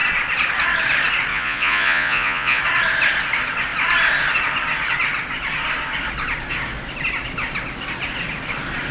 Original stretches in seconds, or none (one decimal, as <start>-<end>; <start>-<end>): 0.0-1.3; 2.6-8.9